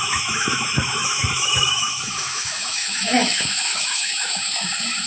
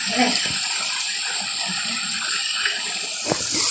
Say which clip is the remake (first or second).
first